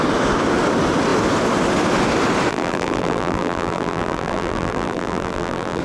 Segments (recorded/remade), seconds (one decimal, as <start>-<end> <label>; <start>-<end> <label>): 0.0-2.5 recorded; 2.5-5.8 remade